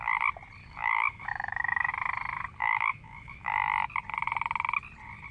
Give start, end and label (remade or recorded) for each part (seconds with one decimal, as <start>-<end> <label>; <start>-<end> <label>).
0.0-0.6 recorded; 0.6-1.9 remade; 1.9-2.6 recorded; 2.6-3.5 remade; 3.5-5.3 recorded